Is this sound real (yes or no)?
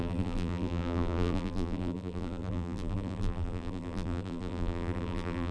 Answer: no